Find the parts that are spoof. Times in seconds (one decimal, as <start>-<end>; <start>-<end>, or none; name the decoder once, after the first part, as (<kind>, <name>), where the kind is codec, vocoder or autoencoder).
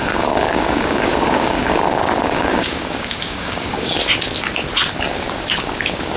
0.0-4.0 (codec, DAC); 5.0-6.2